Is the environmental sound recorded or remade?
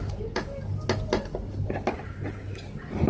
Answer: recorded